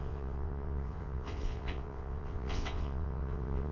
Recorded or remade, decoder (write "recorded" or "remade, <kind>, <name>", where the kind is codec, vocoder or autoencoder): remade, vocoder, WaveNeXt